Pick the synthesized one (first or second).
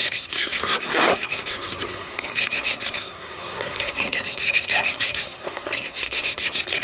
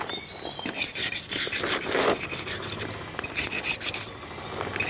first